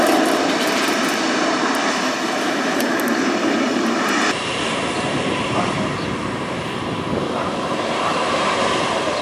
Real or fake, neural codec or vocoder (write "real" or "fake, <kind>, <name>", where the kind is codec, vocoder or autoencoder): fake, vocoder, BigVGAN v2